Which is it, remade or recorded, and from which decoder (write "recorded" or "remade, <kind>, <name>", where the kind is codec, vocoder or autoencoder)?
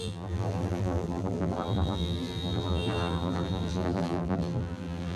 remade, vocoder, BigVGAN v2